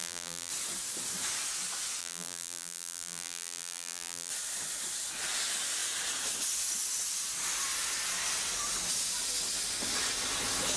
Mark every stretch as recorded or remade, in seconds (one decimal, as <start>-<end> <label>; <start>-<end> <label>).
0.0-0.5 remade; 0.5-2.0 recorded; 2.0-4.3 remade; 4.3-10.8 recorded